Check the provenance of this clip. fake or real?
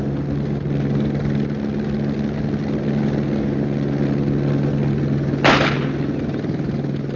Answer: real